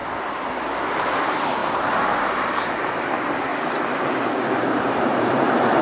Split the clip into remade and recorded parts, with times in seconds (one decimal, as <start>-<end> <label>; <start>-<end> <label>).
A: 0.0-1.2 recorded; 1.2-1.6 remade; 1.6-2.2 recorded; 2.2-3.5 remade; 3.5-4.6 recorded; 4.6-5.8 remade